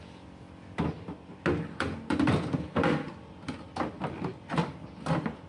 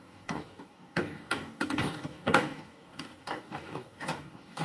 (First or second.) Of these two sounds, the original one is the first